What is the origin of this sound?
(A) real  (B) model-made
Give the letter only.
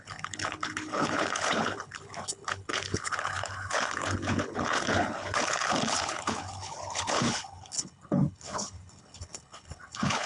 B